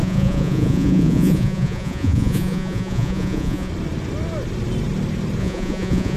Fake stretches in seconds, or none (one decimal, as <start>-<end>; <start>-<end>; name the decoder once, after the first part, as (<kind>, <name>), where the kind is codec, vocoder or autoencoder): 0.0-3.7 (vocoder, Vocos); 5.4-6.2